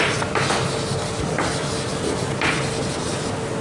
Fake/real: real